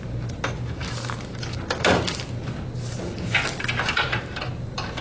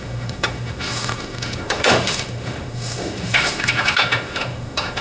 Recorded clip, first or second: first